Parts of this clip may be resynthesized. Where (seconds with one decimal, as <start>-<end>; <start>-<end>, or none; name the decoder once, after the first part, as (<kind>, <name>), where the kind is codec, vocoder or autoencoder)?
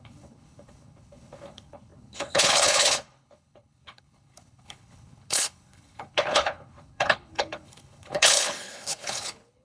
0.0-9.6 (codec, HILCodec)